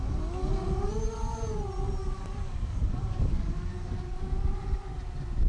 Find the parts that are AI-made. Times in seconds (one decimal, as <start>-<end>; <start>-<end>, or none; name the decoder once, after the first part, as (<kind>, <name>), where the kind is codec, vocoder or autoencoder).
2.0-4.2 (codec, DAC)